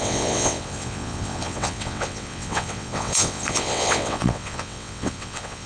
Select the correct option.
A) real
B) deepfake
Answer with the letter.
B